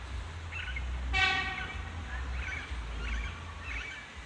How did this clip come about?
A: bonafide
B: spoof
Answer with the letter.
A